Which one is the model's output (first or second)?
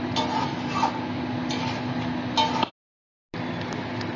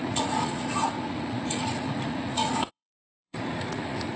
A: second